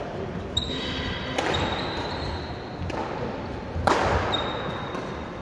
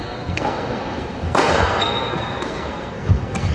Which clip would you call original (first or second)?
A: first